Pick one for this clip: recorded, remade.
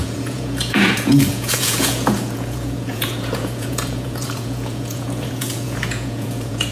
remade